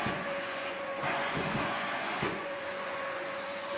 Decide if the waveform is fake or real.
fake